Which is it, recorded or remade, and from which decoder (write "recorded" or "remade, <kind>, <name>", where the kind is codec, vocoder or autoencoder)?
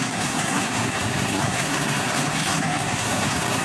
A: remade, codec, SNAC